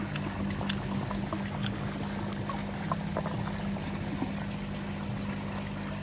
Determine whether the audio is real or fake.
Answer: real